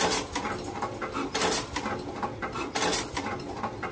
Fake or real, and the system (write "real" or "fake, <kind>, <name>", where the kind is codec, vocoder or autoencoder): real